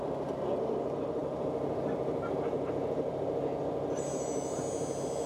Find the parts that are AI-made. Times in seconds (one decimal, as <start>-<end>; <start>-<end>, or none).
none